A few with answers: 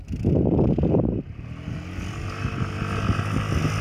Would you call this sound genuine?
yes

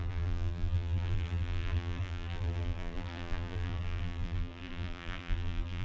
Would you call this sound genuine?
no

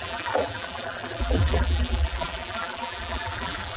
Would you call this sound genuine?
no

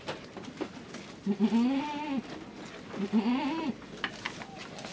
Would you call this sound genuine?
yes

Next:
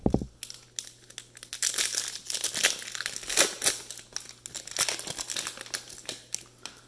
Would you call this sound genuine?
yes